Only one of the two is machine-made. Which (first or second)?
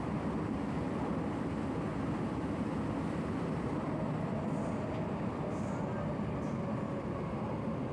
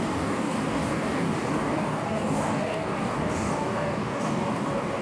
second